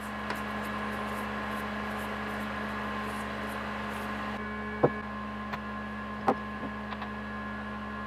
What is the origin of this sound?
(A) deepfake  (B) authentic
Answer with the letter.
B